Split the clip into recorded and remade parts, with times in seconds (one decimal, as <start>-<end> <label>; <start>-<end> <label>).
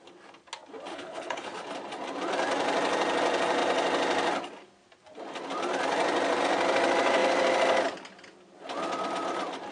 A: 0.0-0.9 recorded; 0.9-1.6 remade; 1.6-9.7 recorded